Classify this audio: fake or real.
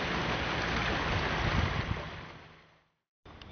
real